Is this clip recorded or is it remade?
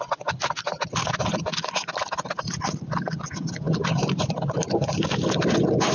recorded